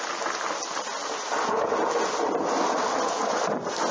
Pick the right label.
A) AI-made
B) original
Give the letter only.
B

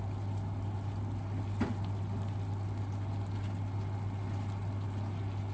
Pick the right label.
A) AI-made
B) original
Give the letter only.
B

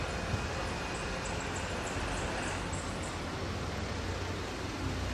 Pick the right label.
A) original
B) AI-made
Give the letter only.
A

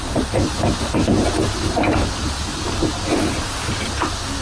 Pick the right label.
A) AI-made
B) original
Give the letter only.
B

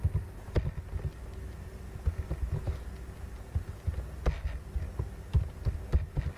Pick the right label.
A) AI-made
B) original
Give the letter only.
B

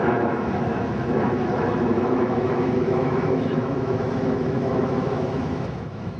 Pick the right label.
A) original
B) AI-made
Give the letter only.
B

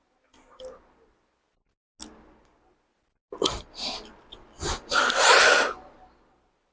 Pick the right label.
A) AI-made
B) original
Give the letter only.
B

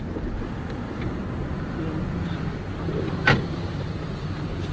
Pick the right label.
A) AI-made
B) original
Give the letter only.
B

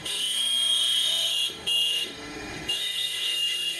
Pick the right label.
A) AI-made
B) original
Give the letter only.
A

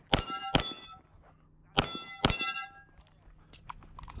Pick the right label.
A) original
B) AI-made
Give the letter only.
A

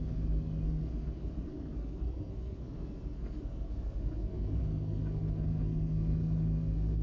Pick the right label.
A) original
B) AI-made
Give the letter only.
B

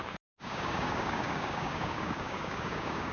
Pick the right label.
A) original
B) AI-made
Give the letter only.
B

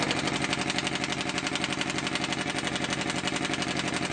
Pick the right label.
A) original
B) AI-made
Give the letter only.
A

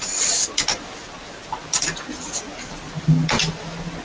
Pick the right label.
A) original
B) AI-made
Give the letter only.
A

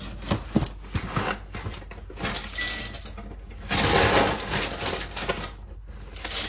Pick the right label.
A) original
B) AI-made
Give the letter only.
A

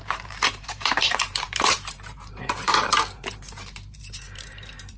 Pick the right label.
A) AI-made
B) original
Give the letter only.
A